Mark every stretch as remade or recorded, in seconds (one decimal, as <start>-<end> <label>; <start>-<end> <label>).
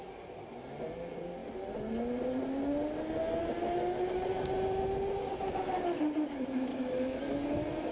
0.0-6.7 recorded; 6.7-7.2 remade; 7.2-7.9 recorded